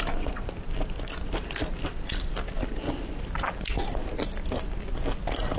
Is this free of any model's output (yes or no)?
yes